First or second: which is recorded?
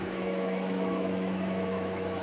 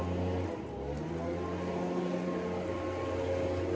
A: second